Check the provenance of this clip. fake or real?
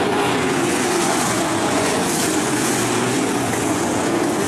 fake